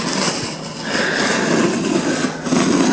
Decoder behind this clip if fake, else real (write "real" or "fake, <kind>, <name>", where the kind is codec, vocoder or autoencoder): real